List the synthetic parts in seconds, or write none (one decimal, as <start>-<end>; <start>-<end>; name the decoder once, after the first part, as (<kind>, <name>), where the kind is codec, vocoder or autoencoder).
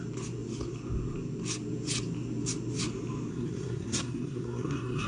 3.3-5.1 (codec, SNAC)